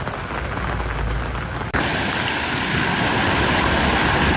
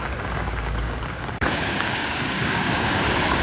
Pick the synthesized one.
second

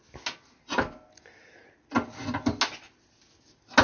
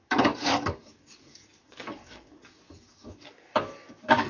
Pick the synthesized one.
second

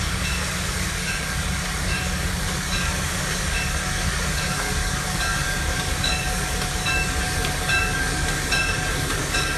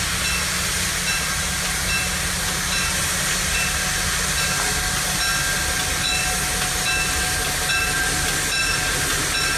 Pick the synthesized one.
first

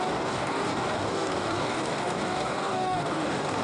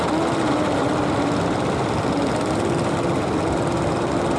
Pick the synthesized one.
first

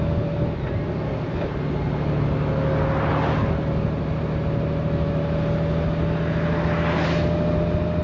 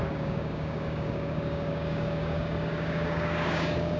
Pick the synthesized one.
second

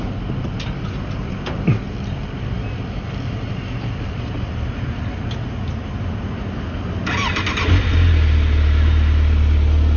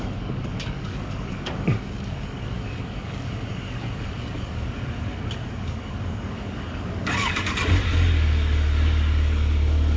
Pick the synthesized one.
second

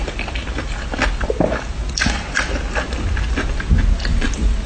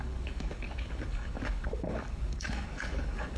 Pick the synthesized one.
second